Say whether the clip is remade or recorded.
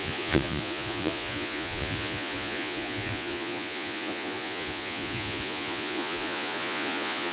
remade